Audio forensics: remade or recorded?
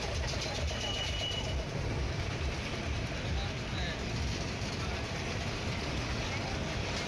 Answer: remade